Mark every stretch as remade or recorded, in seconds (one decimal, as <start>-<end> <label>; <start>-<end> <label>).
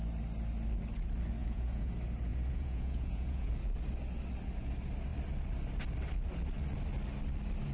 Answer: 0.0-1.4 recorded; 1.4-1.9 remade; 1.9-2.3 recorded; 2.3-3.5 remade; 3.5-7.7 recorded